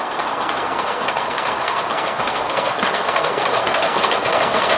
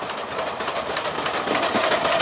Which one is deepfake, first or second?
first